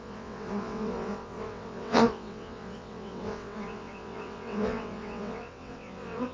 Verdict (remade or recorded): remade